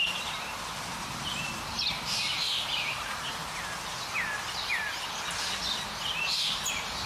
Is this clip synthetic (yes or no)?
no